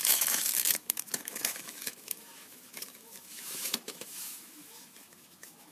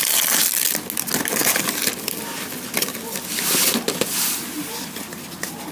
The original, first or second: second